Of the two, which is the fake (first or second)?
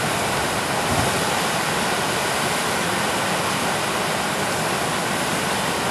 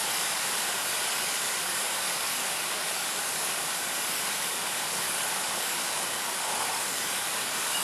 second